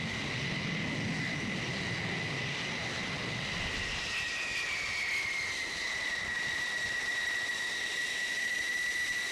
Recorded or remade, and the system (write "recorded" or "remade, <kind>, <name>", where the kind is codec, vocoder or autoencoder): recorded